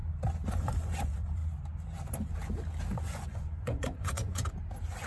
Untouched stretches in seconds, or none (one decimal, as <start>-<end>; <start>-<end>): 0.0-0.5; 1.4-3.0; 4.4-5.1